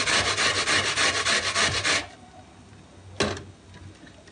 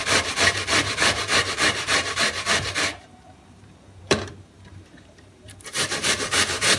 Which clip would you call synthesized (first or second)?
second